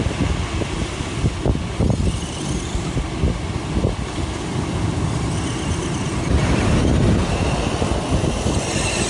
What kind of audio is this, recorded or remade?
recorded